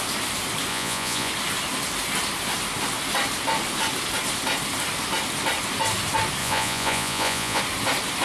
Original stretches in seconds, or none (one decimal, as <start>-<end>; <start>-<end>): 0.0-0.7; 1.3-6.4; 7.6-8.2